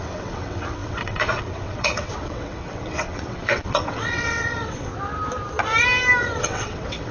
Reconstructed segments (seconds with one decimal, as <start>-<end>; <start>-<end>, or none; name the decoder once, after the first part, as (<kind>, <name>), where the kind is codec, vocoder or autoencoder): 0.0-4.9 (vocoder, WaveNeXt); 6.2-7.1